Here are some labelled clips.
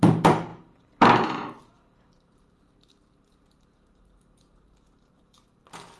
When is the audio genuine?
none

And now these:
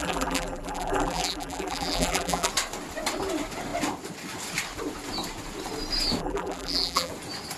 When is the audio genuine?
2.5-6.2; 7.1-7.6